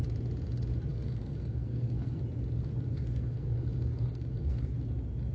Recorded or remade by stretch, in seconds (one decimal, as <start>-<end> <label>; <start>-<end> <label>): 0.0-0.9 recorded; 0.9-2.2 remade; 2.2-2.9 recorded; 2.9-4.7 remade; 4.7-5.3 recorded